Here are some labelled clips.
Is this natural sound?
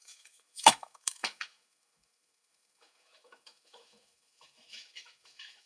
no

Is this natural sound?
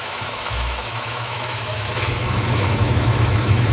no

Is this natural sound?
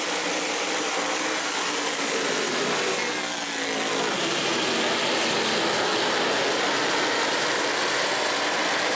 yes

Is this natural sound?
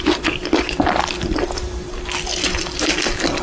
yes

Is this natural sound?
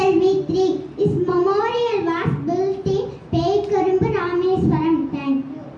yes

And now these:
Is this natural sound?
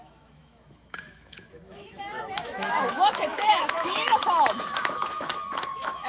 no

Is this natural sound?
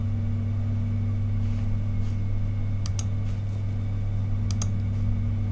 yes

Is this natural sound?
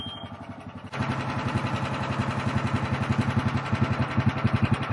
yes